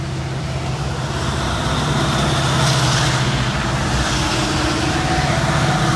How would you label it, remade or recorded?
recorded